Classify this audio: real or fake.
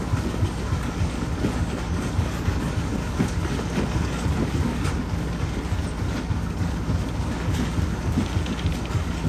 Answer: fake